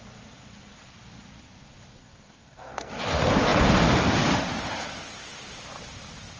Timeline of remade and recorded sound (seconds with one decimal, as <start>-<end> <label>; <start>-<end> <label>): 0.0-2.0 recorded; 2.0-2.9 remade; 2.9-6.4 recorded